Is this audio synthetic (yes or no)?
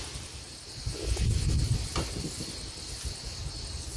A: no